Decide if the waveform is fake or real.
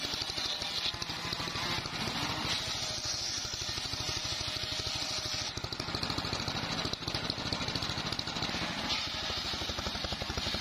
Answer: real